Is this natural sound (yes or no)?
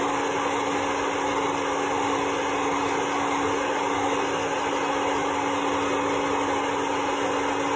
yes